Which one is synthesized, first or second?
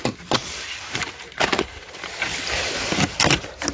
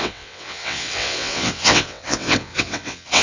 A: second